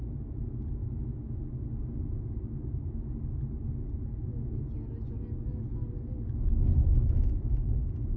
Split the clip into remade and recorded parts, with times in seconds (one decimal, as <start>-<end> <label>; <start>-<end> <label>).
0.0-8.2 recorded